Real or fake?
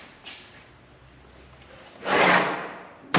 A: real